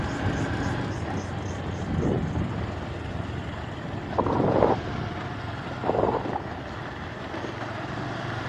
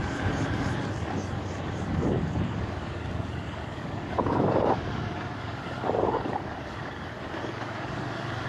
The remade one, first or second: second